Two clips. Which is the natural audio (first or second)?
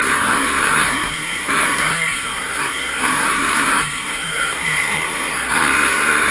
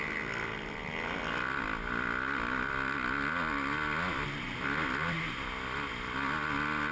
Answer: second